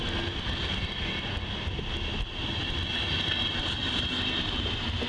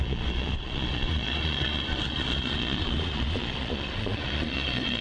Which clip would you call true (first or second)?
first